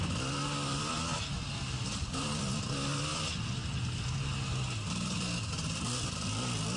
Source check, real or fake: real